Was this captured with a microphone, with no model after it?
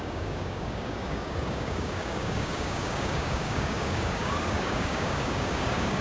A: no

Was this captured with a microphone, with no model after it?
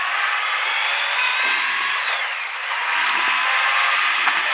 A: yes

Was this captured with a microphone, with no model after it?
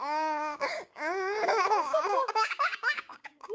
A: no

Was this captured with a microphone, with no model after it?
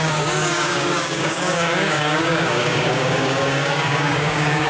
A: no